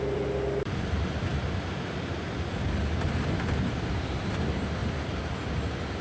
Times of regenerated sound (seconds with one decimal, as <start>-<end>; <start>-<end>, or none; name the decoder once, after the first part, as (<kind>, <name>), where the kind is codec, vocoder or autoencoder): 0.0-4.8 (vocoder, BigVGAN v2); 5.4-6.0